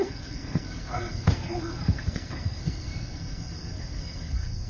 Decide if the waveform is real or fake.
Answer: fake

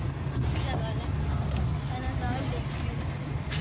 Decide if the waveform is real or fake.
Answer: real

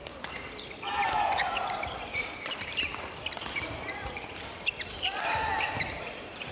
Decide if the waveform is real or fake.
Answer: real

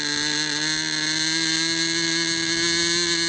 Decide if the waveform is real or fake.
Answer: real